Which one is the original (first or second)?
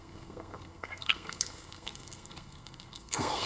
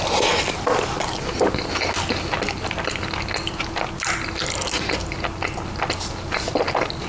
second